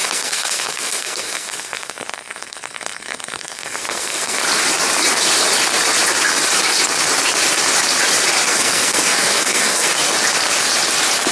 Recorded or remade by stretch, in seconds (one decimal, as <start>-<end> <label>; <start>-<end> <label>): 0.0-4.4 remade; 4.4-8.5 recorded; 8.5-9.9 remade; 9.9-11.3 recorded